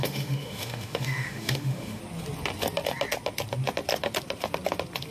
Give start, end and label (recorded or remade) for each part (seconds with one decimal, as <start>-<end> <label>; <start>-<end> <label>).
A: 0.0-2.0 remade; 2.0-5.1 recorded